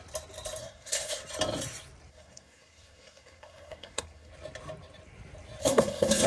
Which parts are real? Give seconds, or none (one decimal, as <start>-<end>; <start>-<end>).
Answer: 0.0-0.6; 1.2-2.1; 4.3-5.6